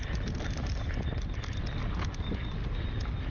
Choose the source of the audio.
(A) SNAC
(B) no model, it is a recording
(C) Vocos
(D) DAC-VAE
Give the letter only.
B